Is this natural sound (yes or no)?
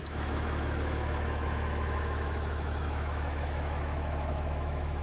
no